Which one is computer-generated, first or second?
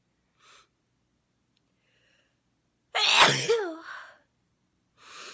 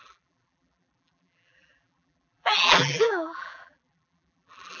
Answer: second